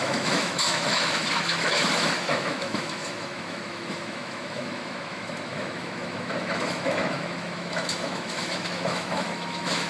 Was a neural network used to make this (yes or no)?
yes